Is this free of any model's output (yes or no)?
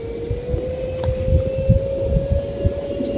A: yes